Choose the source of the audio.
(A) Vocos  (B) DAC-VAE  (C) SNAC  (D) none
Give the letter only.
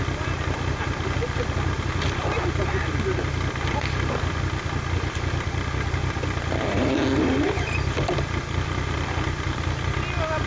D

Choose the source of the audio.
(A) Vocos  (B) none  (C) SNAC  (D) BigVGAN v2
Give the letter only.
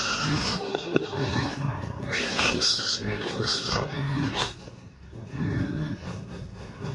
C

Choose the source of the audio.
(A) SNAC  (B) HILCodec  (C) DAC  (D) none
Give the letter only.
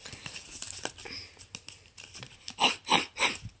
D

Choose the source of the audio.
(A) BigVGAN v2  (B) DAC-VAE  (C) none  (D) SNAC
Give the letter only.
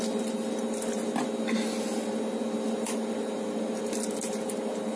C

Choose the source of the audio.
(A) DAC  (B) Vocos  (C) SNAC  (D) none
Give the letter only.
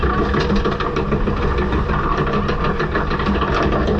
D